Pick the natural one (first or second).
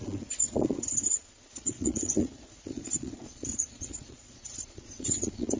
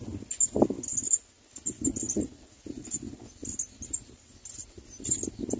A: second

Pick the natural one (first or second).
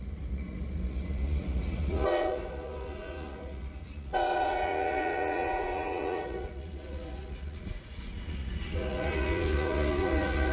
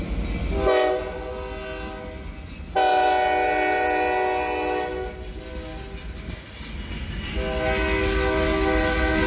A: second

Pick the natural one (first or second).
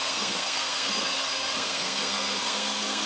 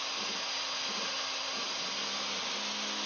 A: second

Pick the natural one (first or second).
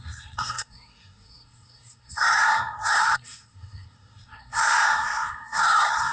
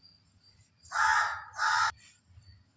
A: second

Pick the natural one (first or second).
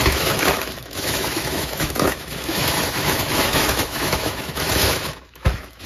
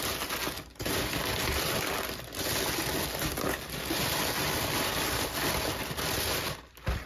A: second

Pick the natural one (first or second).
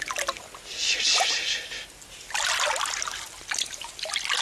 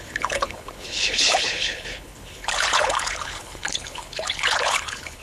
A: first